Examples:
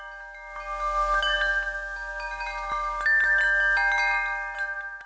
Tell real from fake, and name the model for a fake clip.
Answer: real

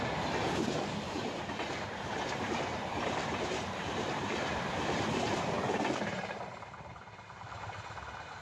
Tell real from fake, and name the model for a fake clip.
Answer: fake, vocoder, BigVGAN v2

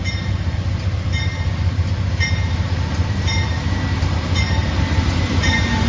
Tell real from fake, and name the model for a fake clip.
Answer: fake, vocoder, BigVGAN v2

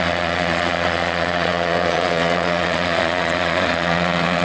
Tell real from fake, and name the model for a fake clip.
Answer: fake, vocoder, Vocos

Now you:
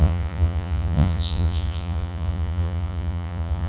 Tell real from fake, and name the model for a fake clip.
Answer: fake, vocoder, Vocos